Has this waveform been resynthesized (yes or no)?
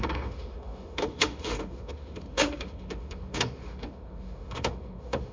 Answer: yes